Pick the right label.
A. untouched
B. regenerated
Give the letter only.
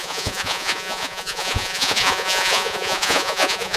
B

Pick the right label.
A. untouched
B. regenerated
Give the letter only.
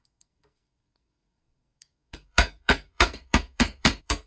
B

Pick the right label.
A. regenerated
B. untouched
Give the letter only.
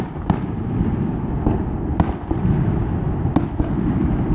B